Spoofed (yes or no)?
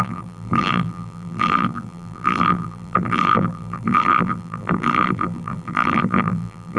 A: yes